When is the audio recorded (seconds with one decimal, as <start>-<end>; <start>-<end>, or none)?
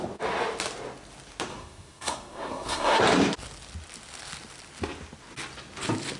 0.0-1.5; 3.0-6.2